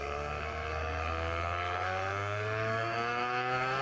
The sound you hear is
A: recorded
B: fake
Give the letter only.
B